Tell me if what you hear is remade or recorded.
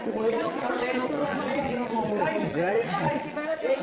remade